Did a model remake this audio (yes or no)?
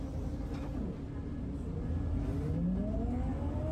no